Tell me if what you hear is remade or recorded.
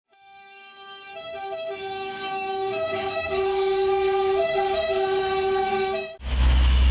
remade